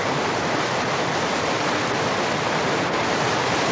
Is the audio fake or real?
real